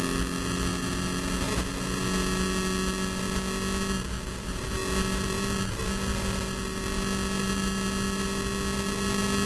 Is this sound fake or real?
real